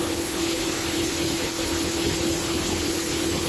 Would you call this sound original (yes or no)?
no